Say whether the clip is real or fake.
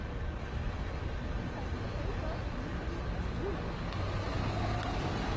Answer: real